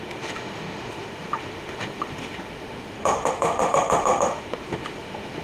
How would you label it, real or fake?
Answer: fake